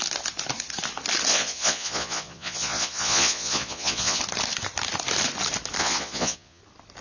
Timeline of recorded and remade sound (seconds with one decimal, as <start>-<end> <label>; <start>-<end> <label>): 0.0-1.3 recorded; 1.3-4.2 remade; 4.2-5.8 recorded; 5.8-6.6 remade; 6.6-7.0 recorded